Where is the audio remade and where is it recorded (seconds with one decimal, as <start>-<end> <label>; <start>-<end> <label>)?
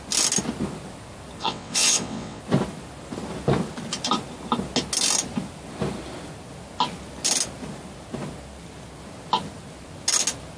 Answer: 0.0-1.4 recorded; 1.4-2.4 remade; 2.4-10.6 recorded